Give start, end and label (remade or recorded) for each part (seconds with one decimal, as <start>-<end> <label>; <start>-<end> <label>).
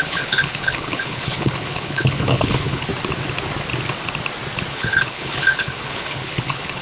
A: 0.0-2.9 remade; 2.9-4.7 recorded; 4.7-6.8 remade